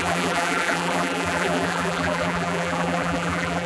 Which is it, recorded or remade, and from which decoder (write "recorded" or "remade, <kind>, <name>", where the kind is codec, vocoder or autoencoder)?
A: remade, vocoder, BigVGAN v2